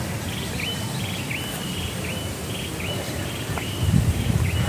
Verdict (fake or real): real